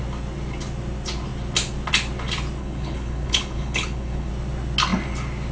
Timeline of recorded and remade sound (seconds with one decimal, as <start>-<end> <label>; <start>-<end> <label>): 0.0-2.6 recorded; 2.6-4.3 remade; 4.3-5.5 recorded